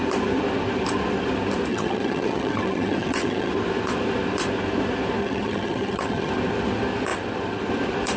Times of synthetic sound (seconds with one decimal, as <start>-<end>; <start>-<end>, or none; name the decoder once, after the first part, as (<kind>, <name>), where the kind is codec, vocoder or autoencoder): 1.7-3.5 (vocoder, HiFi-GAN); 5.2-6.3